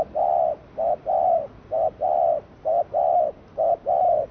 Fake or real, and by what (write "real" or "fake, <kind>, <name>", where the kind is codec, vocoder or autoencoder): real